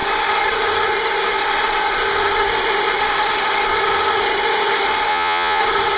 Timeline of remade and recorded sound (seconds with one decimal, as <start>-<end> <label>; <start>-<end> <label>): 0.0-5.1 recorded; 5.1-5.6 remade; 5.6-6.0 recorded